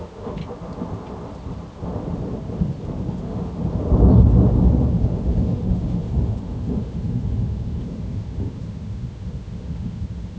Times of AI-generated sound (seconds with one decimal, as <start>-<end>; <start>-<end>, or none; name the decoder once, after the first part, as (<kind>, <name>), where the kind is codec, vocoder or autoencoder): 0.0-0.4 (autoencoder, DAC-VAE); 3.1-3.6; 5.0-10.4